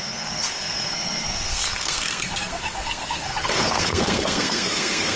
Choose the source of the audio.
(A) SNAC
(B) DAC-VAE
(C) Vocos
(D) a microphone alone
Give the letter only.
A